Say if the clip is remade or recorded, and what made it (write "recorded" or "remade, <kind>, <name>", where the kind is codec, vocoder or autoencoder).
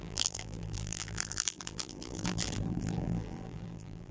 remade, vocoder, BigVGAN v2